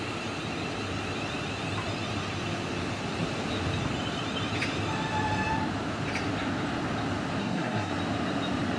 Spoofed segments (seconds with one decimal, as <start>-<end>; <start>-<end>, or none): 7.4-7.9